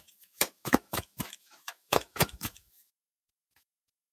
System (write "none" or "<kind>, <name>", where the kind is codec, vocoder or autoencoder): autoencoder, DAC-VAE